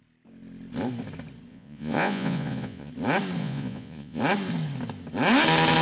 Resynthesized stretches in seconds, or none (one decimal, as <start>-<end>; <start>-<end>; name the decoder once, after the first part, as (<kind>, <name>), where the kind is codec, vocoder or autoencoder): 1.5-2.9 (vocoder, Vocos); 3.4-4.2